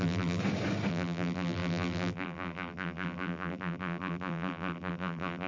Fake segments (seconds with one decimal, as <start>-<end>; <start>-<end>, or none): 0.0-0.4; 0.9-5.5